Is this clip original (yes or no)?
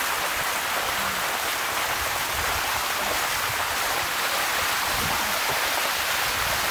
yes